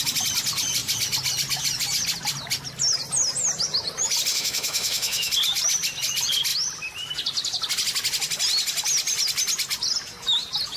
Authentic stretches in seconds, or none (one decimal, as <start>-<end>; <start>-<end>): 0.0-4.3; 5.3-10.8